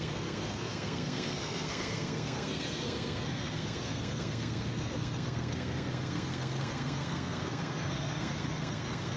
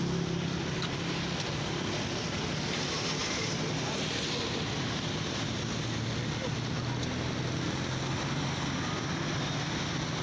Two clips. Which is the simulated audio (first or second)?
first